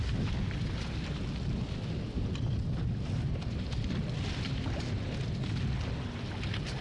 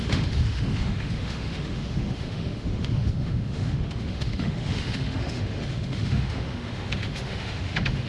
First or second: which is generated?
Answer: second